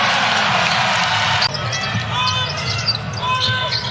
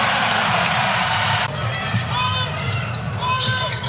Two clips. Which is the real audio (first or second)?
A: first